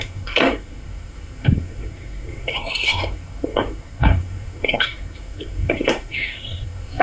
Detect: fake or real fake